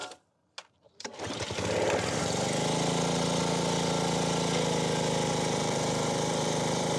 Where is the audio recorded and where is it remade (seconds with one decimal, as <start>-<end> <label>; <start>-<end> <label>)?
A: 0.0-0.7 recorded; 0.7-1.1 remade; 1.1-5.3 recorded; 5.3-7.0 remade